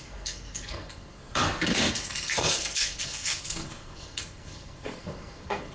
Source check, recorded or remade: remade